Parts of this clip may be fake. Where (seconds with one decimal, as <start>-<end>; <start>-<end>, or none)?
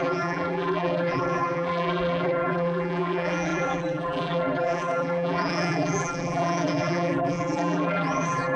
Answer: 0.0-8.6